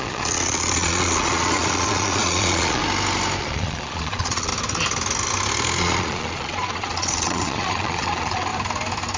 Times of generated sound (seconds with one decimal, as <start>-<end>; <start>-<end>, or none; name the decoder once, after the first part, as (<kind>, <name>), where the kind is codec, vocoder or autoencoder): 0.0-2.8 (vocoder, Vocos); 3.4-4.5; 5.8-8.5